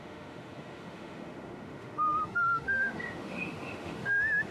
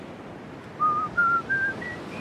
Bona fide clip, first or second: second